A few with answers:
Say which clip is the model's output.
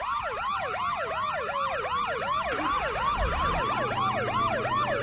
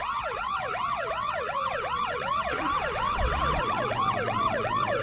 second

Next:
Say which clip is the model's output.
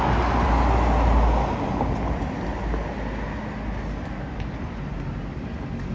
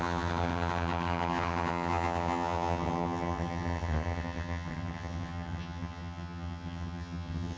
second